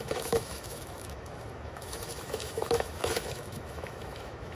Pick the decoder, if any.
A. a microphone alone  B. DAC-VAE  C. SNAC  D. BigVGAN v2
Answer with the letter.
B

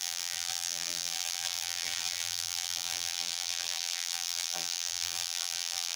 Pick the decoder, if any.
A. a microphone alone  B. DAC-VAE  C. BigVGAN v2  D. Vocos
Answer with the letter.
C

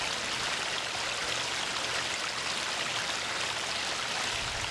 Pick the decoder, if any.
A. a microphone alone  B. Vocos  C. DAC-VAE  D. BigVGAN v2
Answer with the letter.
A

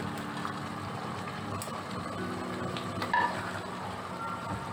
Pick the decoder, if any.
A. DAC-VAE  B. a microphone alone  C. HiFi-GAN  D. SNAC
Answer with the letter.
B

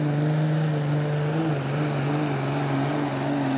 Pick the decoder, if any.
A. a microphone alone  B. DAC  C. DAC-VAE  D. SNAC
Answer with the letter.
A